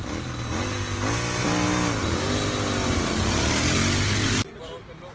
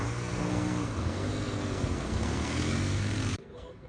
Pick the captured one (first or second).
first